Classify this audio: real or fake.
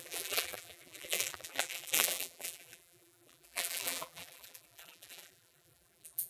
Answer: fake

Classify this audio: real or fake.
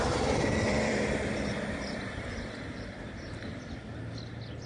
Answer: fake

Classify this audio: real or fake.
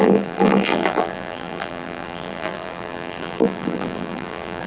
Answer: fake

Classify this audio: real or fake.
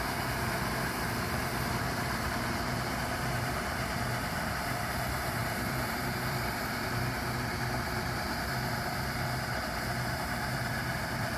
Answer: fake